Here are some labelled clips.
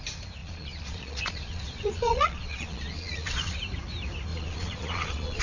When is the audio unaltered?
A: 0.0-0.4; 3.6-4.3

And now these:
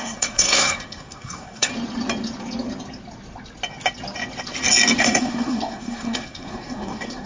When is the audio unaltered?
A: 1.7-5.0

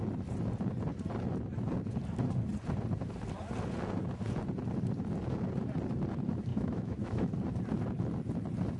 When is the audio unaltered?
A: 0.0-6.5; 7.3-8.8